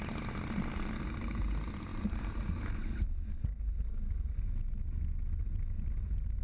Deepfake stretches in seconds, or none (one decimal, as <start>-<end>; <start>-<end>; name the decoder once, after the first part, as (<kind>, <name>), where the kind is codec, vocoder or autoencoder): none